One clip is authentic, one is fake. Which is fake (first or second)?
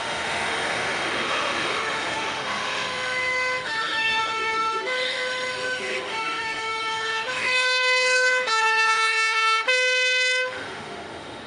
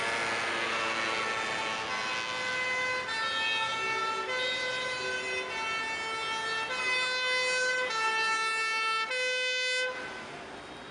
first